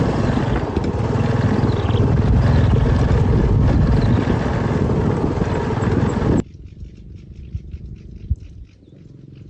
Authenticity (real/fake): real